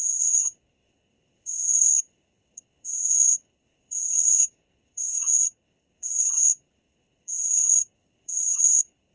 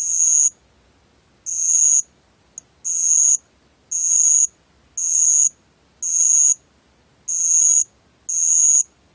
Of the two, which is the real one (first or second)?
second